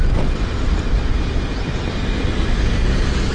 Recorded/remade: recorded